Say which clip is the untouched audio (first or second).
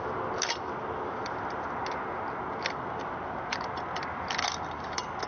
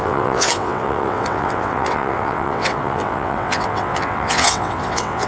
first